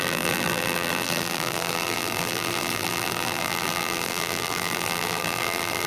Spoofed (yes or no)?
yes